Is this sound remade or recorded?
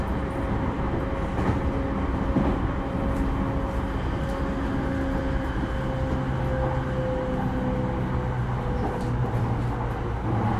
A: recorded